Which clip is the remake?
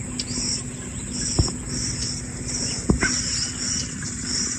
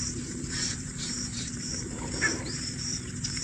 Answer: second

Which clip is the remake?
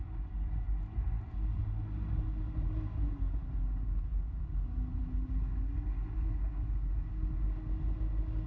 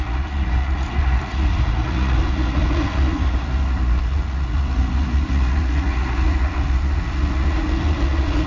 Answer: second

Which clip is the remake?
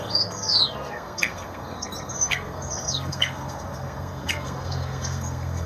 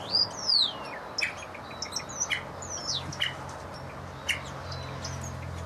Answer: first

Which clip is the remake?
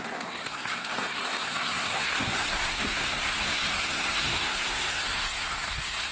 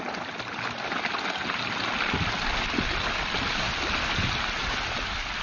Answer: first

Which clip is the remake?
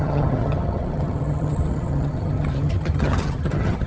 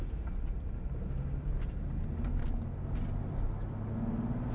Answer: first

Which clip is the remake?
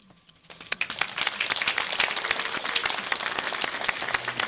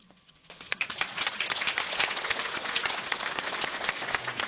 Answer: second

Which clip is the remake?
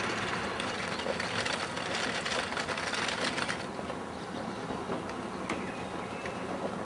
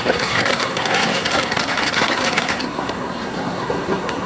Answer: second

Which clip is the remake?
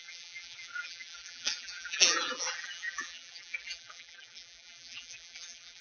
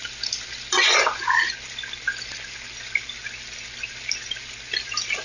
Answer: first